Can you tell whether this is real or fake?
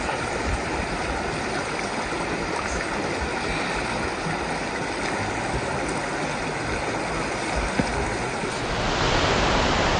real